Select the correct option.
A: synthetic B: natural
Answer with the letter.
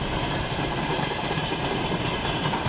A